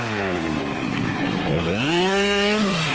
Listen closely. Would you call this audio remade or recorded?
remade